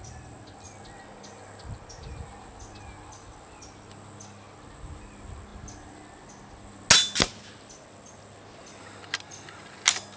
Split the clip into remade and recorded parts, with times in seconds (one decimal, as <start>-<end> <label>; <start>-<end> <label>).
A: 0.0-10.2 recorded